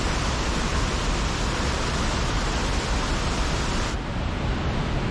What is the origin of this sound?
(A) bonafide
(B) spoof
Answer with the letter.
A